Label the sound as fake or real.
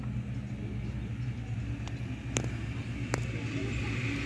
real